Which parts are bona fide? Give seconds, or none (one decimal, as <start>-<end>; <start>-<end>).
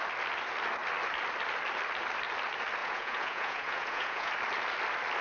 0.0-2.8; 4.3-5.2